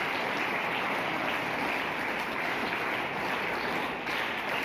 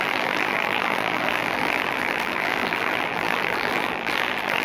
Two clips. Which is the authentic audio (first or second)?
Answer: first